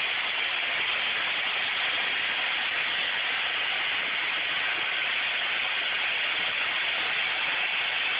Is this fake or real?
real